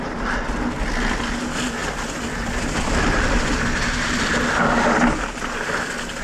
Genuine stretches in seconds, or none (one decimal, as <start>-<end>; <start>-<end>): 0.0-6.2